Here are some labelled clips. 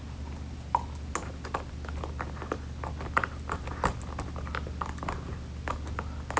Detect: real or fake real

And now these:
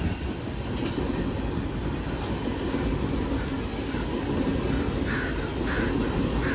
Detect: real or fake real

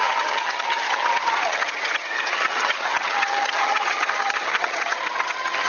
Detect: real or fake fake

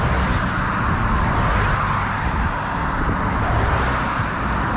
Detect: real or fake real